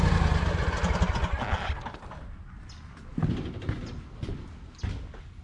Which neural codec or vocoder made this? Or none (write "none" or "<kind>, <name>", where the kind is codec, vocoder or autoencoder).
none